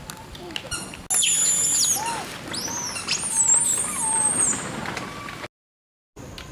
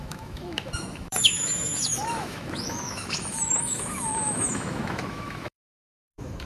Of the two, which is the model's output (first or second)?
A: second